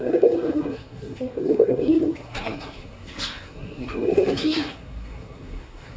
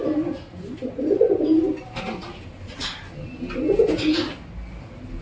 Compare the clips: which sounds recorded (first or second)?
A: second